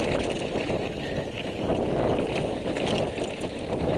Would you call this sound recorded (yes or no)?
yes